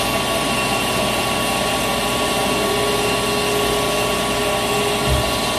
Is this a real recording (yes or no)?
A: yes